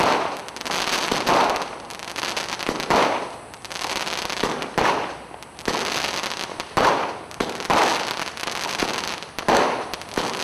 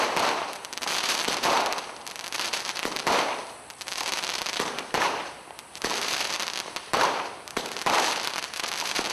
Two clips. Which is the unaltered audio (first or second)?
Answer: first